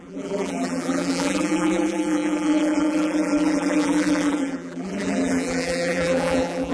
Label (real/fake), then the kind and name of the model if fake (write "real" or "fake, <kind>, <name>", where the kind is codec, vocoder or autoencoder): fake, vocoder, BigVGAN v2